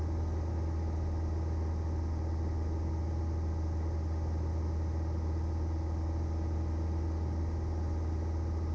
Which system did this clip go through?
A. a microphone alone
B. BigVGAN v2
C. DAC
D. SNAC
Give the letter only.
A